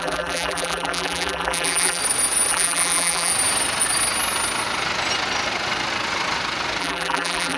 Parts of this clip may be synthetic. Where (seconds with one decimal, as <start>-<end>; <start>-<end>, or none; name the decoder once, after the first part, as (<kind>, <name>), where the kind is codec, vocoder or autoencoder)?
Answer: 0.0-2.0 (vocoder, BigVGAN v2); 2.5-3.3; 6.8-7.6